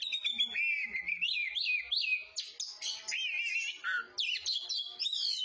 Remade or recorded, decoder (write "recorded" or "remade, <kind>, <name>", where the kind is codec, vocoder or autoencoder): recorded